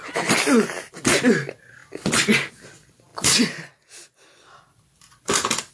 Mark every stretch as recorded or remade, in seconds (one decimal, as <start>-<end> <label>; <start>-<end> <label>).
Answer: 0.0-3.1 recorded; 3.1-5.7 remade